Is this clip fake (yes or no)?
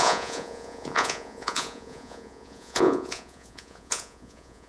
yes